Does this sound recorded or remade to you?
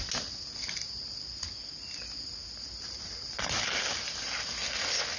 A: recorded